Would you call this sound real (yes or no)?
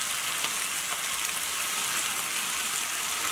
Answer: yes